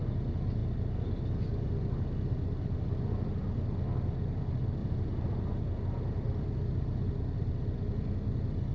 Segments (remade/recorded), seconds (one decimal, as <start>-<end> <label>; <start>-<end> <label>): 0.0-4.8 recorded; 4.8-5.6 remade; 5.6-8.7 recorded